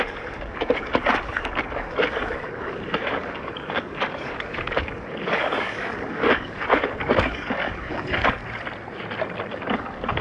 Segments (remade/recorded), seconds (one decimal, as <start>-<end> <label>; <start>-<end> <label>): 0.0-8.4 remade; 8.4-9.5 recorded; 9.5-10.2 remade